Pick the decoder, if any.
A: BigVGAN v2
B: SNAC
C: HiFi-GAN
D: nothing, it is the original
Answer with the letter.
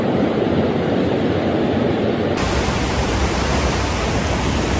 D